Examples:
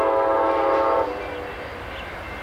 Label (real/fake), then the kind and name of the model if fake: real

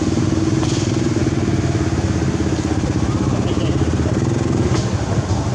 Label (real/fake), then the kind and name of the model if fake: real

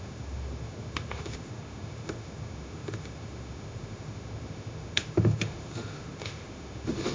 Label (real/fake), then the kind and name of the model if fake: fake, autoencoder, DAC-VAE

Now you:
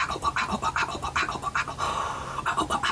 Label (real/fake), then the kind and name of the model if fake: real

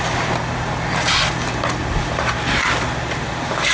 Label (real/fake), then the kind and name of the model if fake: real